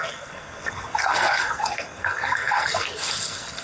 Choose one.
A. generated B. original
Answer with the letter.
A